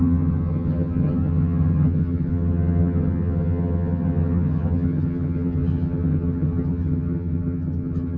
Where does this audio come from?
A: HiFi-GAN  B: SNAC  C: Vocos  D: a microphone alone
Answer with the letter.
A